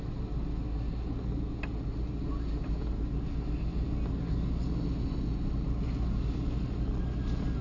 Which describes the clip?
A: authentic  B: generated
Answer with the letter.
A